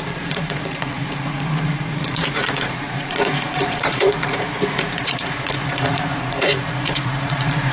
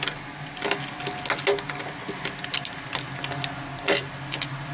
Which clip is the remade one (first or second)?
first